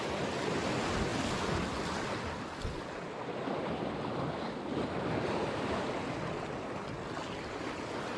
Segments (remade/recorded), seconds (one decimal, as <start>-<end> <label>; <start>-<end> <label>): 0.0-8.2 recorded